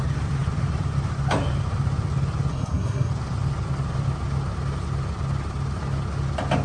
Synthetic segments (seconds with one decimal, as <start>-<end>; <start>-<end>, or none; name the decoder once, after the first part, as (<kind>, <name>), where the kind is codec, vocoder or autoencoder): 2.5-3.1 (codec, SNAC)